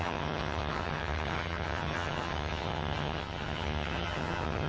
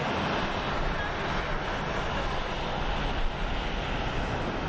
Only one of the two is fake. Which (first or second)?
first